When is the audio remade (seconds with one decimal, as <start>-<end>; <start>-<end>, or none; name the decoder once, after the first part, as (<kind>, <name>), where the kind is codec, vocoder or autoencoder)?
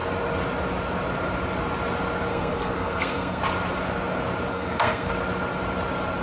2.3-3.4 (codec, SNAC); 4.5-5.1